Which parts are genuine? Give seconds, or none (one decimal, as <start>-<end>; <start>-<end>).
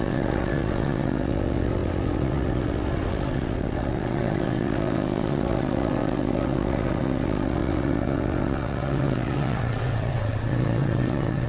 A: none